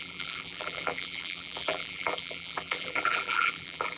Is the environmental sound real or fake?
fake